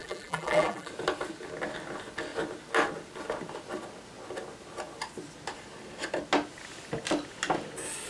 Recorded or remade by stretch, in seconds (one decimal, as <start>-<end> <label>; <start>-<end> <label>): 0.0-0.9 remade; 0.9-8.1 recorded